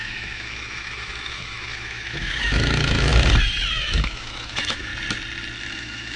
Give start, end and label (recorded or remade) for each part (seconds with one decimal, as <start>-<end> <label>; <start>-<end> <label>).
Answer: 0.0-3.1 remade; 3.1-3.7 recorded; 3.7-4.9 remade; 4.9-5.7 recorded; 5.7-6.2 remade